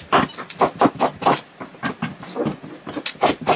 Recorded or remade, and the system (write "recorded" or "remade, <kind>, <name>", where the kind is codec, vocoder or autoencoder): recorded